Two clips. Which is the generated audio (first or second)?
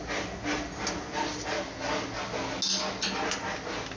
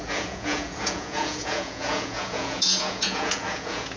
second